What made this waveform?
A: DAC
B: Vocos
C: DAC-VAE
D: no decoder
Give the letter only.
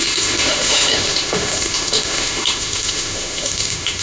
C